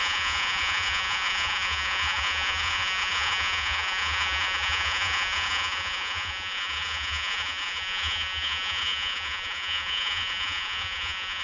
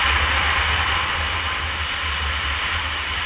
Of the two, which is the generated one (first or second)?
first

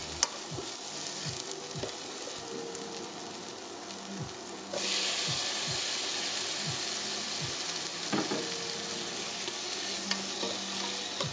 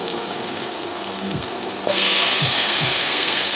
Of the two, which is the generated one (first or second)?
second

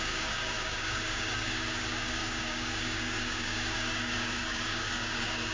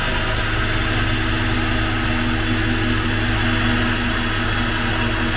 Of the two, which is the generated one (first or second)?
first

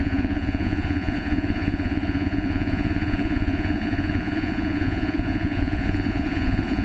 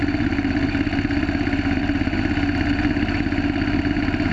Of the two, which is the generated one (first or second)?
first